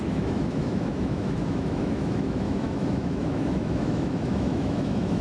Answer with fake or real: fake